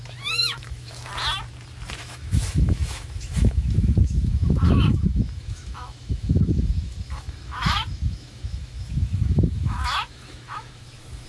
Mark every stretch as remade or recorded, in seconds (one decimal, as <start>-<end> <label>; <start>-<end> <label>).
0.0-1.1 remade; 1.1-2.0 recorded; 2.0-11.3 remade